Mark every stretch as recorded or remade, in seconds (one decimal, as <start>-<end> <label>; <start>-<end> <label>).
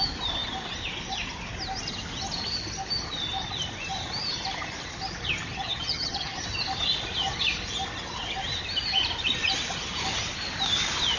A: 0.0-5.5 recorded; 5.5-6.4 remade; 6.4-11.2 recorded